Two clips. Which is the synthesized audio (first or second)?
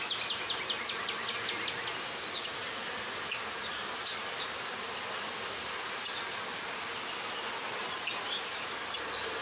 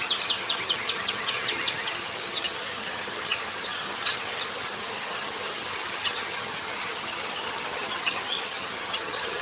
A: second